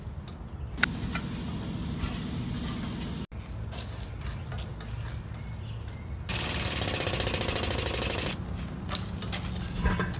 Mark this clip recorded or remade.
recorded